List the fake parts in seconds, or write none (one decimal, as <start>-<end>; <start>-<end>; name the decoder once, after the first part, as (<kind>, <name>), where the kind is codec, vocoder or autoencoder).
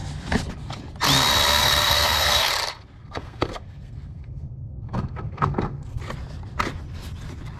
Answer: 1.5-2.5 (codec, SNAC); 3.0-6.0